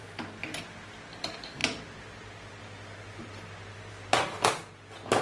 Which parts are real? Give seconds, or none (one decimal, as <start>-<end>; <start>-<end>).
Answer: 0.0-5.2